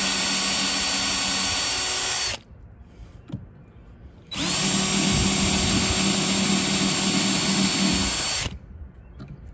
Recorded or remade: recorded